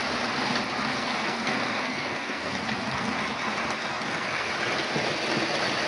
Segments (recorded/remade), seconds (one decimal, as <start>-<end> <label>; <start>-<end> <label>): 0.0-0.9 recorded; 0.9-3.2 remade; 3.2-3.9 recorded; 3.9-4.5 remade; 4.5-5.9 recorded